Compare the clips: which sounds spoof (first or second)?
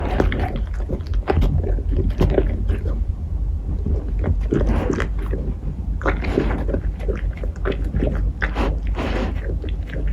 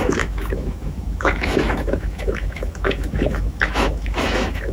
second